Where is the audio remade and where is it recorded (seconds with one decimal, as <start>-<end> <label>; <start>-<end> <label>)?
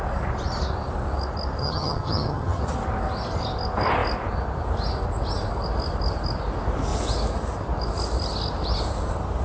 0.0-1.6 recorded; 1.6-2.6 remade; 2.6-9.4 recorded